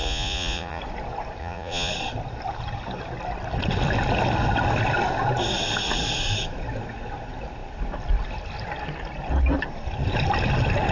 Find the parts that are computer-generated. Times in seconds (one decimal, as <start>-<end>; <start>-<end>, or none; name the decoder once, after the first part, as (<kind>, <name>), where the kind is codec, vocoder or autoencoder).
0.0-0.8 (vocoder, Vocos); 1.4-1.9

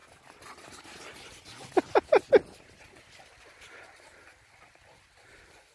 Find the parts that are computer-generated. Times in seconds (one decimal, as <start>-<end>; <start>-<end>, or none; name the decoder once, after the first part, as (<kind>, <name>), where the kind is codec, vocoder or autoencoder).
none